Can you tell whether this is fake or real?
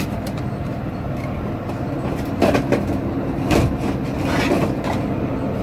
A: real